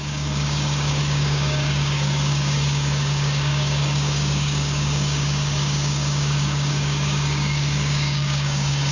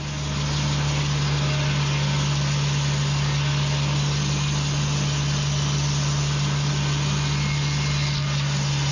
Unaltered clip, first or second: second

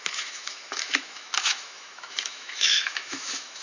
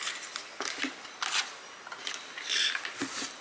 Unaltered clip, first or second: second